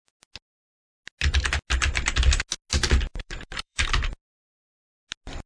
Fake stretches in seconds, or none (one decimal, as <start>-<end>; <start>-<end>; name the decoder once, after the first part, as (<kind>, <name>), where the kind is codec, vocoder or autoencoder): 3.1-3.8 (vocoder, BigVGAN v2)